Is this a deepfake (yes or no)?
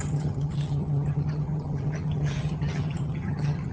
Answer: yes